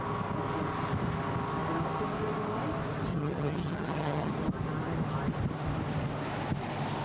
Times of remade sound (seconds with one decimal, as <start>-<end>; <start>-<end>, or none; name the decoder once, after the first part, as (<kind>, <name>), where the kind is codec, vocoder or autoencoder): 3.1-4.3 (vocoder, HiFi-GAN)